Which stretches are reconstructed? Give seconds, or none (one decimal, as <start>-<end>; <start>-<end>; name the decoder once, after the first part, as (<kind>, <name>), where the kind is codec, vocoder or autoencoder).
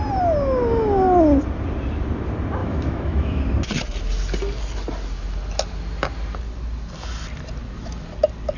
2.6-3.4 (autoencoder, DAC-VAE)